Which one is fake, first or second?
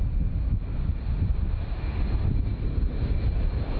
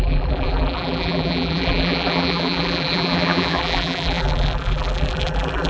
second